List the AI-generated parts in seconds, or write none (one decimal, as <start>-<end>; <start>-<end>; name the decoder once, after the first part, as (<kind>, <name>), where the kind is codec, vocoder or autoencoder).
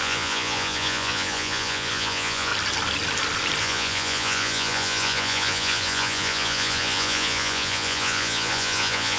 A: 0.0-2.5 (vocoder, Vocos); 3.6-9.2